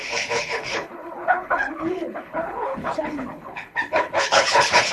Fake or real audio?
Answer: fake